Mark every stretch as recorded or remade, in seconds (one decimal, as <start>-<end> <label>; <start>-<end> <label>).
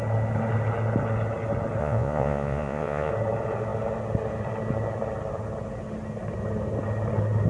0.0-1.8 recorded; 1.8-3.1 remade; 3.1-7.5 recorded